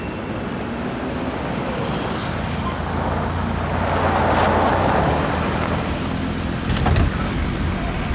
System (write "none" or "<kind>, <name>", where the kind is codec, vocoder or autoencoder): none